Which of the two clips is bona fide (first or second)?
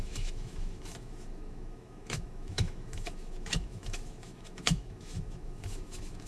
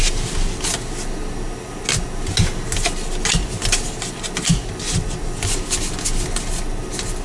second